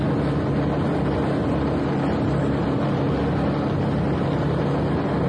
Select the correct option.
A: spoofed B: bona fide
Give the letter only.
B